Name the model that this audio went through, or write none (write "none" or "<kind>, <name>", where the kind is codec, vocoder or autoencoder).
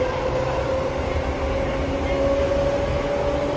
none